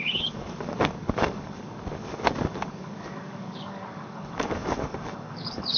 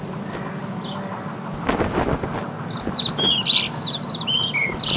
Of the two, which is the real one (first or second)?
second